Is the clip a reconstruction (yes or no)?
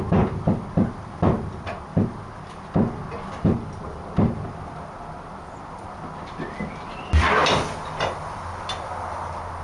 no